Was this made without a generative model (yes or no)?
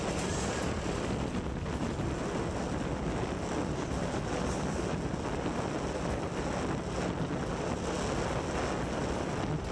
yes